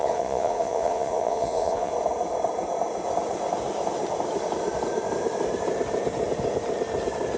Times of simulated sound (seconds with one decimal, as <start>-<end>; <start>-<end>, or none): 0.0-1.9